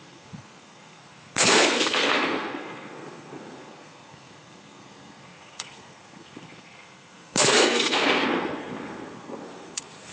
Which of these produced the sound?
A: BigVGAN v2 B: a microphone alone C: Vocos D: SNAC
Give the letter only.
D